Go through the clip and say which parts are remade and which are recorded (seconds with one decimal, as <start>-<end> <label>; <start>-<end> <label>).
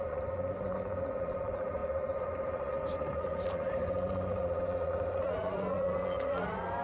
0.0-6.8 remade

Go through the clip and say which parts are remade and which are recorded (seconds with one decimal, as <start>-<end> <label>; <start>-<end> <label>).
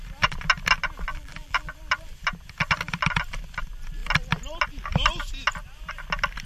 0.0-1.1 recorded; 1.1-1.7 remade; 1.7-6.5 recorded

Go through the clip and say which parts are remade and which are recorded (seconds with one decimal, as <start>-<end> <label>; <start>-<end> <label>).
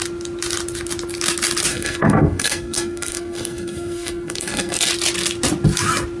0.0-1.7 recorded; 1.7-4.9 remade; 4.9-6.2 recorded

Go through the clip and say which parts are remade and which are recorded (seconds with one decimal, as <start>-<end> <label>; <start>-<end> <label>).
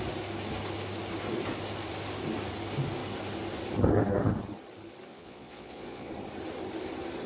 0.0-5.1 recorded; 5.1-6.1 remade; 6.1-7.3 recorded